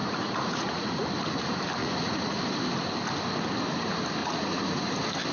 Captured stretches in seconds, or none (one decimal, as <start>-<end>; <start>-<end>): 1.0-1.8; 2.4-4.2; 4.8-5.3